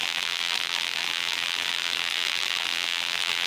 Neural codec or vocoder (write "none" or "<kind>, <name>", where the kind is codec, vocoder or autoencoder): vocoder, BigVGAN v2